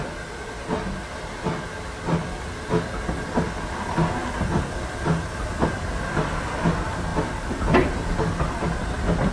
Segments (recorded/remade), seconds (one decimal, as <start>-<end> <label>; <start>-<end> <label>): 0.0-9.3 recorded